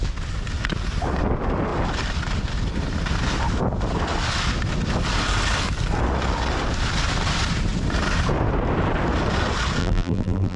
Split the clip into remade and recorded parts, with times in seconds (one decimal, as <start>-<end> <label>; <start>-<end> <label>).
0.0-9.8 recorded; 9.8-10.6 remade